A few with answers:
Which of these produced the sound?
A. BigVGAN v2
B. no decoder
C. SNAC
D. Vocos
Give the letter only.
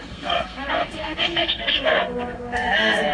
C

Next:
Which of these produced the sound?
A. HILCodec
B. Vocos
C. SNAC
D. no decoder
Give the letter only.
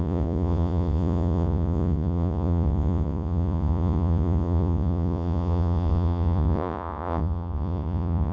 B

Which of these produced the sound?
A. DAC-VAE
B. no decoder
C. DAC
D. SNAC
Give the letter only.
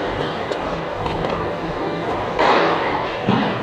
C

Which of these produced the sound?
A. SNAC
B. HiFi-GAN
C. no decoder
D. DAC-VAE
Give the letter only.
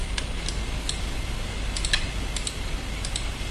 C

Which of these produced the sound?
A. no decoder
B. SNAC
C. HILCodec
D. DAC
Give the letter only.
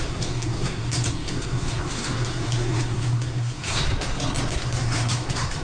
B